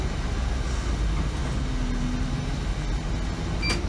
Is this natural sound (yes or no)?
yes